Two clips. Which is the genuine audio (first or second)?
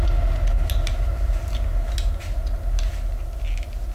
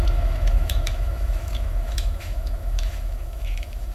first